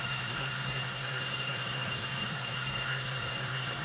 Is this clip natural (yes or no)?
no